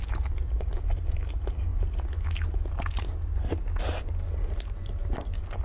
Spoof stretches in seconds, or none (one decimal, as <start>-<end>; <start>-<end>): 0.0-1.7; 3.8-5.6